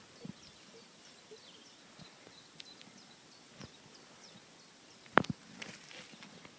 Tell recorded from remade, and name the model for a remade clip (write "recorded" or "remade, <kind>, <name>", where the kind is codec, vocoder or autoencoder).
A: recorded